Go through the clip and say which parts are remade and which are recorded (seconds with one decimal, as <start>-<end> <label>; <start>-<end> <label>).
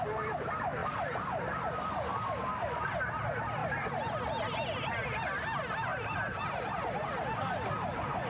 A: 0.0-0.8 recorded; 0.8-1.7 remade; 1.7-3.6 recorded; 3.6-4.4 remade; 4.4-5.9 recorded; 5.9-6.6 remade; 6.6-8.3 recorded